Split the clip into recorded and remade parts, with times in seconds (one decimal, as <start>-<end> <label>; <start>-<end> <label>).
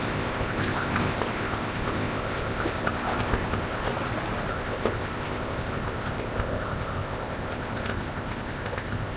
0.0-3.9 remade; 3.9-4.5 recorded; 4.5-9.2 remade